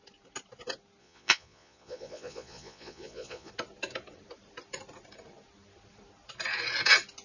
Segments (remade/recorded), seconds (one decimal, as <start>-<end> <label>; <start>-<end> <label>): 0.0-1.0 recorded; 1.0-3.5 remade; 3.5-7.2 recorded